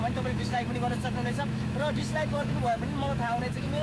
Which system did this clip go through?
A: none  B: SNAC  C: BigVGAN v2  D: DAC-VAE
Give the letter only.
D